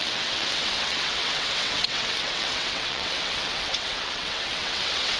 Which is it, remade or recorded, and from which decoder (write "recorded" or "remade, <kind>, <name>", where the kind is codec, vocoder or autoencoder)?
remade, vocoder, WaveNeXt